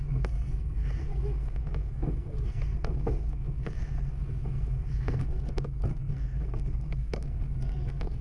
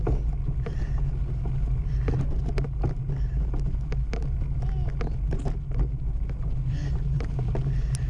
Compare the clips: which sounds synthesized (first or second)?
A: first